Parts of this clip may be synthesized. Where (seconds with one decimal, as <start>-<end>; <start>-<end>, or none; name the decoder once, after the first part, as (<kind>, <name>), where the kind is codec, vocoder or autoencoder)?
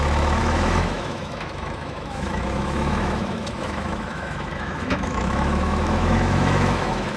0.0-7.2 (autoencoder, DAC-VAE)